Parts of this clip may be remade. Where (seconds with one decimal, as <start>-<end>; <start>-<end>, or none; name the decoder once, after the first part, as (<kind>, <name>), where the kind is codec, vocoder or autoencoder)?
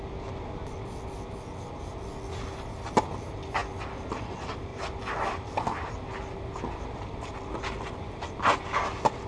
none